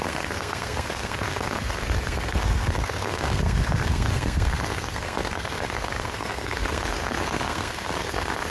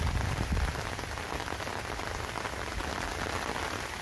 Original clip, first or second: second